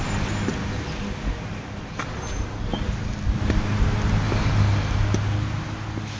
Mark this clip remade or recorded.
recorded